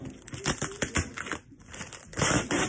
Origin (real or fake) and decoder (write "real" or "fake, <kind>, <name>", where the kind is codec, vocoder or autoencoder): real